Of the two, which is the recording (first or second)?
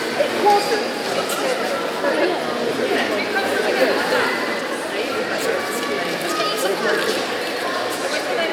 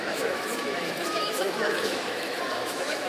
first